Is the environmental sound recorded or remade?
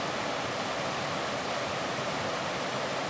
recorded